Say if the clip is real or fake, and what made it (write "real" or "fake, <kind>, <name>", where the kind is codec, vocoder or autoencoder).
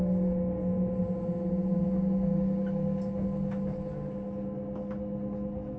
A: real